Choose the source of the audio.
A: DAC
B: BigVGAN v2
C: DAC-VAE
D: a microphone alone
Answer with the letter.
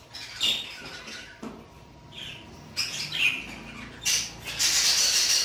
B